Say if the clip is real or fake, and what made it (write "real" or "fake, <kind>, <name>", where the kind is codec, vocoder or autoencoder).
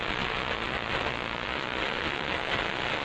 fake, vocoder, Vocos